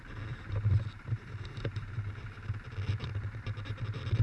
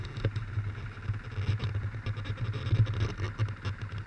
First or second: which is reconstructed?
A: first